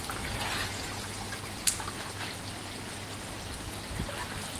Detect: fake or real real